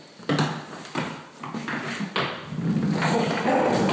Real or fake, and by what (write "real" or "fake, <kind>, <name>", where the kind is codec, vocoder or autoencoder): real